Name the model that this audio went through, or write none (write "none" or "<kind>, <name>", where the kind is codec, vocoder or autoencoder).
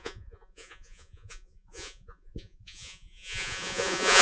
vocoder, Vocos